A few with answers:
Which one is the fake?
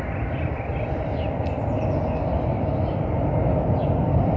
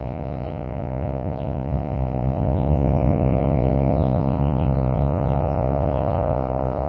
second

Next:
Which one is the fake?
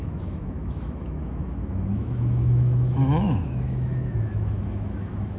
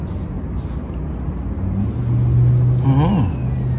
first